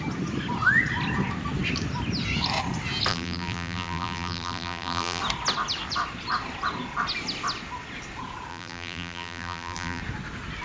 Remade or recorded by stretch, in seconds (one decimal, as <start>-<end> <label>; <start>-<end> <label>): 0.0-3.1 recorded; 3.1-5.2 remade; 5.2-8.5 recorded; 8.5-10.0 remade; 10.0-10.6 recorded

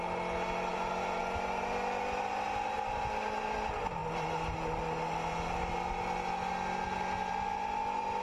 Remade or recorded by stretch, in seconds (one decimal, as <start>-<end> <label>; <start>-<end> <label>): 0.0-0.7 recorded; 0.7-1.2 remade; 1.2-8.2 recorded

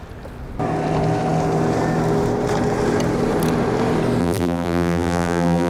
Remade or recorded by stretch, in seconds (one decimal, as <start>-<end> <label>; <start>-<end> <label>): 0.0-4.2 recorded; 4.2-5.7 remade

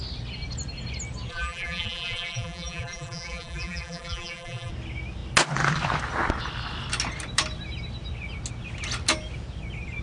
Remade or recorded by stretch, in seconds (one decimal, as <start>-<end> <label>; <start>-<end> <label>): 0.0-1.3 recorded; 1.3-4.7 remade; 4.7-10.0 recorded

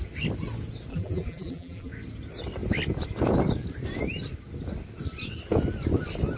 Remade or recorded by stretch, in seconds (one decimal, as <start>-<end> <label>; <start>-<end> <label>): 0.0-0.9 recorded; 0.9-1.9 remade; 1.9-6.4 recorded

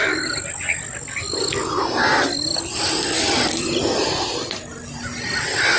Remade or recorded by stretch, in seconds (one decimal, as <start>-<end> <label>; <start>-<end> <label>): 0.0-5.8 recorded